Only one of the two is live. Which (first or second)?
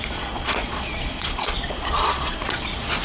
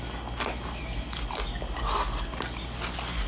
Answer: second